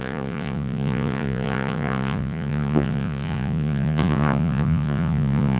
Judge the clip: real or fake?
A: fake